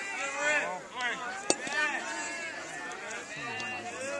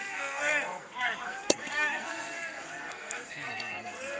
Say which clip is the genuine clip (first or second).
first